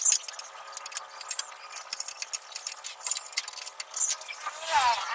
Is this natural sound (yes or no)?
yes